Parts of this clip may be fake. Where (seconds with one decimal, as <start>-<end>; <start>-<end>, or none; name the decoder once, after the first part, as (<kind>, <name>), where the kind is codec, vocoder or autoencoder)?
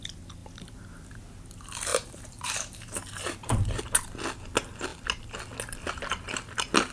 1.9-3.8 (vocoder, BigVGAN v2)